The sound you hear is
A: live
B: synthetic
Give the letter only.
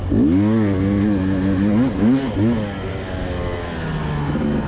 A